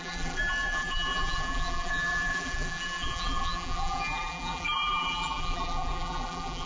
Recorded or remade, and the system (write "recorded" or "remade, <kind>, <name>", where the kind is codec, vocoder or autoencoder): remade, vocoder, BigVGAN v2